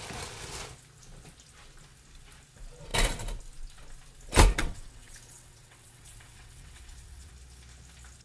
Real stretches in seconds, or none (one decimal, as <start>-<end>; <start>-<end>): 0.0-4.6; 7.3-8.2